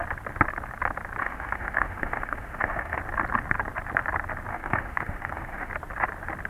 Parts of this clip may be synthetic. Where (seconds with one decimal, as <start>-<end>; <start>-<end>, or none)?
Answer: 1.2-3.0; 4.5-5.7